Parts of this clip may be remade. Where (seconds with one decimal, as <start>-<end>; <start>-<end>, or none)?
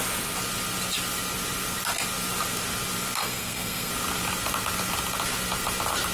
3.2-3.9